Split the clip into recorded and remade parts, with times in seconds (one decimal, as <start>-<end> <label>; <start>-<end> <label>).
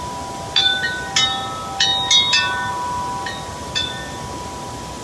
0.0-5.0 recorded